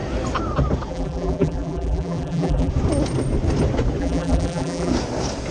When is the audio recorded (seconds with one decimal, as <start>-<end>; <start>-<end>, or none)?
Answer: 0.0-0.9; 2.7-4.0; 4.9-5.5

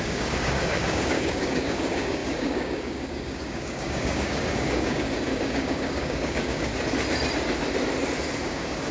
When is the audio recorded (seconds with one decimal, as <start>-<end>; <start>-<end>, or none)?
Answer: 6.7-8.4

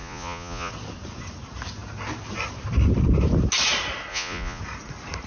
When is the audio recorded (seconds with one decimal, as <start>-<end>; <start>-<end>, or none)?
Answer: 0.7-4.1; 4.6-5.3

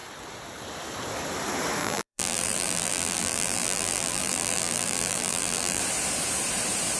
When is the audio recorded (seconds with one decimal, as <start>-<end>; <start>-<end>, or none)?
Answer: 0.0-1.8; 5.8-7.0